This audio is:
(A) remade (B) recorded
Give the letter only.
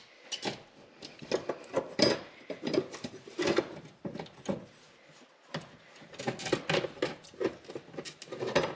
B